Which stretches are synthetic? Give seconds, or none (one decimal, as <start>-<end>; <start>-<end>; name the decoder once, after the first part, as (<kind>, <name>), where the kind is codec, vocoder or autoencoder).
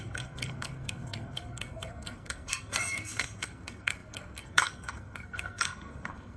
0.0-6.4 (codec, SNAC)